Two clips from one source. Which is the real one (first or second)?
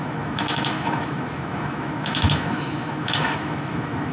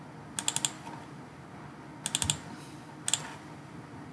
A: second